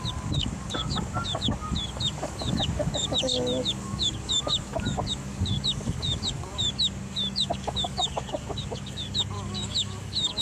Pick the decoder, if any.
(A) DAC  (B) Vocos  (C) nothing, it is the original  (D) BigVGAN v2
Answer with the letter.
A